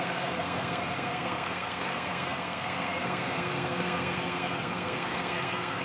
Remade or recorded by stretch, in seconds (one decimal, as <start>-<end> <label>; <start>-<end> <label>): 0.0-5.8 remade